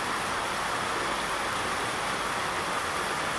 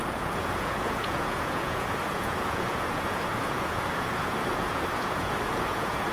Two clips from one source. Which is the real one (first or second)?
first